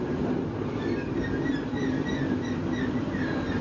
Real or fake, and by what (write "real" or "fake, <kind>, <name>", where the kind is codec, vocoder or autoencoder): real